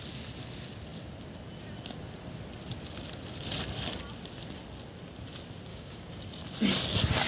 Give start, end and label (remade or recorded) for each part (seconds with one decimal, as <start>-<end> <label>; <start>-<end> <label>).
0.0-5.7 recorded; 5.7-6.2 remade; 6.2-7.3 recorded